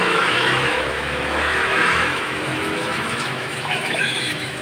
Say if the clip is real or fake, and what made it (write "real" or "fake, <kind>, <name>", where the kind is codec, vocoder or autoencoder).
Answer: fake, autoencoder, DAC-VAE